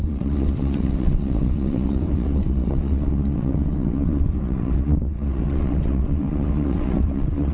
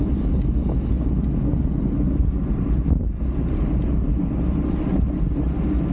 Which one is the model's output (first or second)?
first